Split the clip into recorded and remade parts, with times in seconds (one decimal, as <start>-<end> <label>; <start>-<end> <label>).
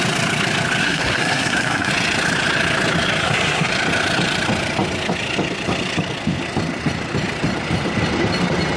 0.0-0.8 recorded; 0.8-1.9 remade; 1.9-3.2 recorded; 3.2-3.7 remade; 3.7-8.8 recorded